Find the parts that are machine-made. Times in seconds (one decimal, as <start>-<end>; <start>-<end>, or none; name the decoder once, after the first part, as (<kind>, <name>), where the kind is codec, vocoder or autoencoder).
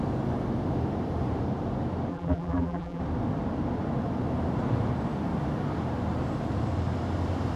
2.1-3.0 (vocoder, BigVGAN v2)